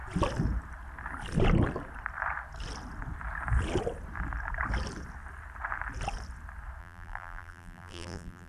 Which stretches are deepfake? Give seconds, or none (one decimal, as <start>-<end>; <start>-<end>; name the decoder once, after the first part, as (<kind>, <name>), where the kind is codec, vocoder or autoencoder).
6.8-8.5 (vocoder, BigVGAN v2)